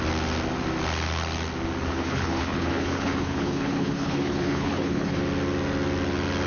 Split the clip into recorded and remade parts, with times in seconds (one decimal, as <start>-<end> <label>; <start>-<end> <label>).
0.0-1.9 recorded; 1.9-5.2 remade; 5.2-6.5 recorded